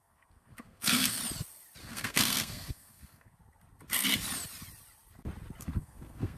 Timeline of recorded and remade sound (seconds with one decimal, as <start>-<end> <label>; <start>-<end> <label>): 0.0-1.2 remade; 1.2-1.8 recorded; 1.8-3.4 remade; 3.4-5.6 recorded; 5.6-6.4 remade